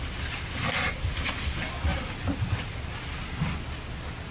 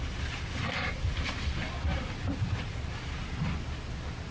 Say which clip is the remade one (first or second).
second